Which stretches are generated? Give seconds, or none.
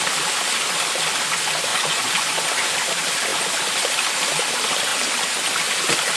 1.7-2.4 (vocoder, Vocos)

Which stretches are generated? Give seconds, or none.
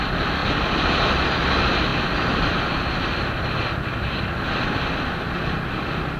none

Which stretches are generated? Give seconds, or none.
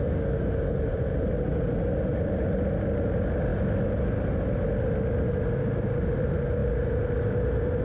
none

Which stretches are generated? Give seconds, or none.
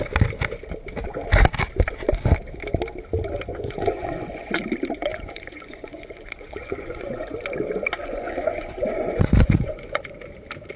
3.5-4.6 (vocoder, Vocos); 5.1-7.2; 8.0-10.0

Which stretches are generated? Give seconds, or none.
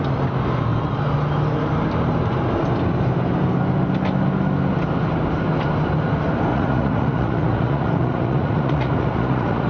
6.5-9.7 (vocoder, Vocos)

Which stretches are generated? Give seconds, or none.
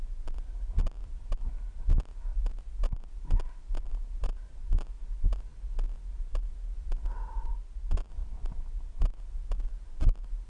none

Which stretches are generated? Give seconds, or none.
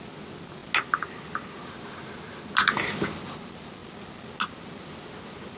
none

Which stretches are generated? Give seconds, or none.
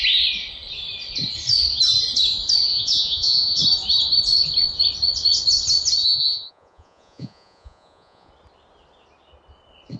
2.7-3.6 (vocoder, Vocos); 6.0-8.3